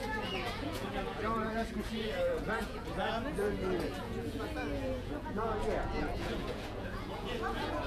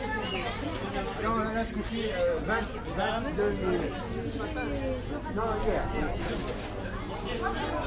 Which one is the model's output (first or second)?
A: first